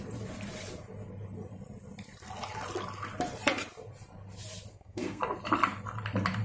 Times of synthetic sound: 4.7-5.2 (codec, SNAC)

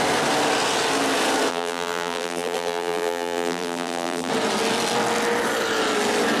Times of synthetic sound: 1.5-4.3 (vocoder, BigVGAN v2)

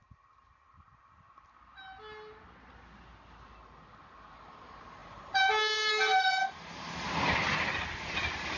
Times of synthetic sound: 5.0-7.2 (vocoder, BigVGAN v2)

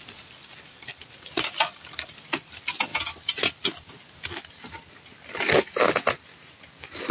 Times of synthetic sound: none

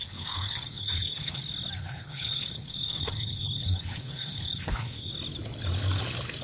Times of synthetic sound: 0.0-1.4 (codec, HILCodec); 1.8-5.1